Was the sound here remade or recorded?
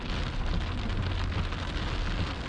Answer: recorded